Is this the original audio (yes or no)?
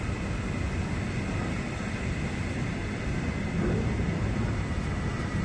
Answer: yes